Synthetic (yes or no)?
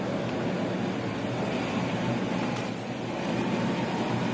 no